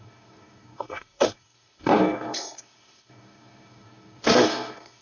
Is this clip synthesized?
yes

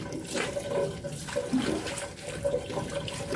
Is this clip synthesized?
no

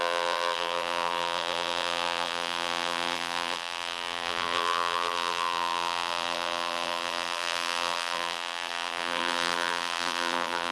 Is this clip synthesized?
yes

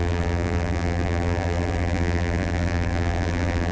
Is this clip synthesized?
yes